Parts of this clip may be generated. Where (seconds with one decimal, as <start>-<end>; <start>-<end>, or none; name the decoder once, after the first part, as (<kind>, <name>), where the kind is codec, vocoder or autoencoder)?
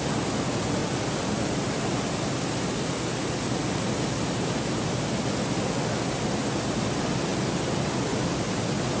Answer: 0.8-4.0 (vocoder, BigVGAN v2); 7.3-8.6